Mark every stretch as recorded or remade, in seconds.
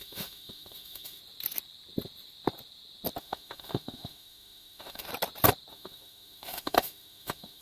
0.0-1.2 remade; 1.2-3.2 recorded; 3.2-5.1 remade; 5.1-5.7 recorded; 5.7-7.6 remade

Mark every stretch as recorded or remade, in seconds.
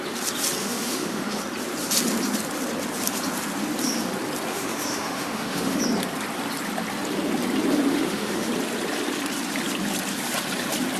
0.0-0.6 recorded; 0.6-1.4 remade; 1.4-4.5 recorded; 4.5-5.8 remade; 5.8-7.9 recorded; 7.9-8.5 remade; 8.5-11.0 recorded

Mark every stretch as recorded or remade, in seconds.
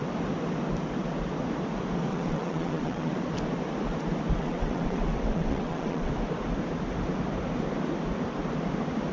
0.0-2.1 recorded; 2.1-3.1 remade; 3.1-4.4 recorded; 4.4-6.1 remade; 6.1-9.1 recorded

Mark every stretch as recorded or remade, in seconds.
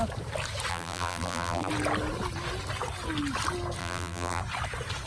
0.0-0.7 recorded; 0.7-1.7 remade; 1.7-3.8 recorded; 3.8-4.4 remade; 4.4-5.1 recorded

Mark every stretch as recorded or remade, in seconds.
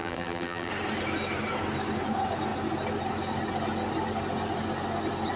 0.0-0.7 remade; 0.7-5.4 recorded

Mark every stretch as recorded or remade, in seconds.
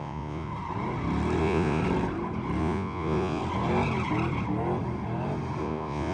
0.0-0.5 remade; 0.5-1.4 recorded; 1.4-1.8 remade; 1.8-2.6 recorded; 2.6-3.4 remade; 3.4-5.6 recorded; 5.6-6.1 remade